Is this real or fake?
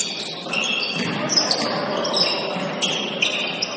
real